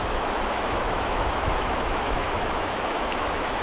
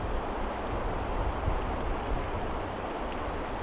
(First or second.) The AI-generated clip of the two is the first